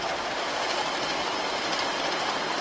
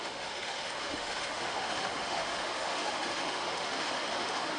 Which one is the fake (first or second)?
second